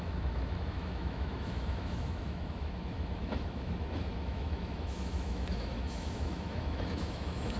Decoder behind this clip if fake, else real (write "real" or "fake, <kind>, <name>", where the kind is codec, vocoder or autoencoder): fake, autoencoder, DAC-VAE